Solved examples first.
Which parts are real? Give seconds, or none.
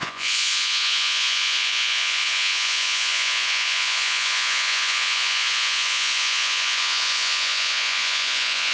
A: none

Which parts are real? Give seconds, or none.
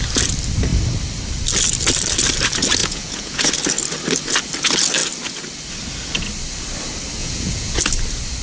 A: 0.0-2.8; 3.5-7.2; 7.8-8.4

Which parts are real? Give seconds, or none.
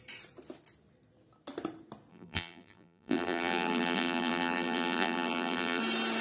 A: 0.0-2.1; 5.8-6.2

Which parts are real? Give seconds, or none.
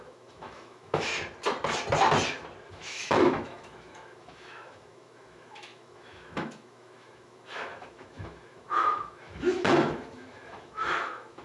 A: 1.1-2.7